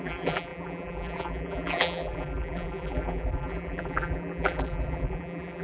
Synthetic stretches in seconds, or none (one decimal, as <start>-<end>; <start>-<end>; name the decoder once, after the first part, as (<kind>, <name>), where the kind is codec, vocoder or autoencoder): 0.0-5.6 (vocoder, BigVGAN v2)